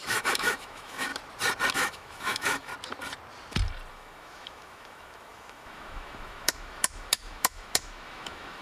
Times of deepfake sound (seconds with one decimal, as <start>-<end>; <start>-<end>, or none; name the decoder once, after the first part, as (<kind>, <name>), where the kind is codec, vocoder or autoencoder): 0.0-1.1 (autoencoder, DAC-VAE); 1.7-2.7; 3.9-8.6